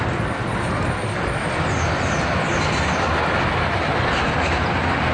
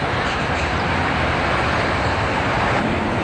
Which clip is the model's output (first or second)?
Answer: second